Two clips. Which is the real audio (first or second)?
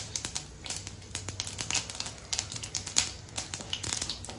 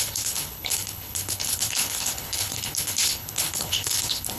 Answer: first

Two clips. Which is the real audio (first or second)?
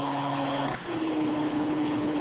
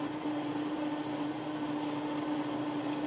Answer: second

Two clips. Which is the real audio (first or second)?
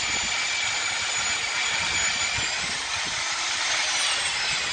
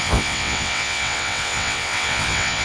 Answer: first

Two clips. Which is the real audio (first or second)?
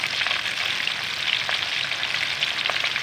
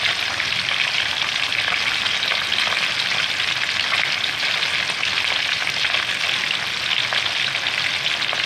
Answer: second